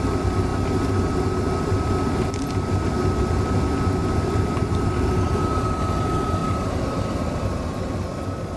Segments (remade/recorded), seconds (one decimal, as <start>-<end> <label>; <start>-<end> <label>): 0.0-4.0 recorded; 4.0-5.1 remade; 5.1-6.4 recorded; 6.4-7.1 remade; 7.1-8.6 recorded